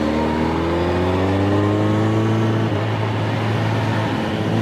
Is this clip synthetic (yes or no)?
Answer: no